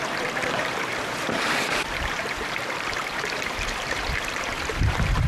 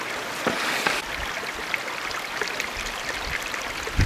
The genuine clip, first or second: second